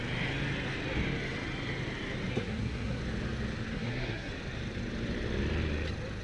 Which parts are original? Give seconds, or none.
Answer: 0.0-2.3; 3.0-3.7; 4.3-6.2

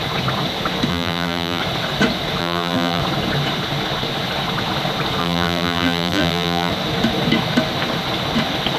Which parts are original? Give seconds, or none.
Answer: 0.0-0.9; 1.6-2.4; 3.0-5.2; 6.7-8.8